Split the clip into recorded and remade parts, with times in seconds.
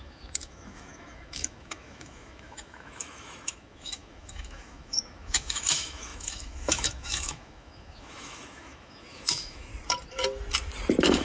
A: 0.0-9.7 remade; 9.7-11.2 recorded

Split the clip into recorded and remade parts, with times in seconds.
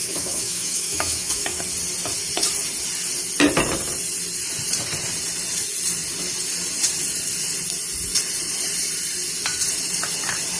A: 0.0-1.6 remade; 1.6-10.6 recorded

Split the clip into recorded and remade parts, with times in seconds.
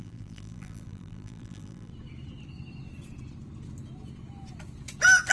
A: 0.0-1.9 remade; 1.9-5.3 recorded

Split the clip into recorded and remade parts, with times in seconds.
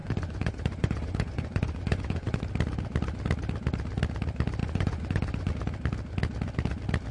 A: 0.0-2.4 remade; 2.4-4.6 recorded; 4.6-5.5 remade; 5.5-7.1 recorded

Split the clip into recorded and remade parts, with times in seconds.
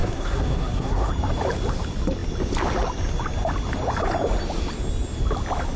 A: 0.0-1.1 remade; 1.1-5.8 recorded